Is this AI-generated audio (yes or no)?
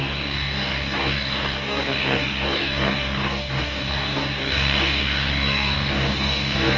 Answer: yes